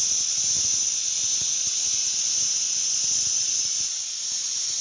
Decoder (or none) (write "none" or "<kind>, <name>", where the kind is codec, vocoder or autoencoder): none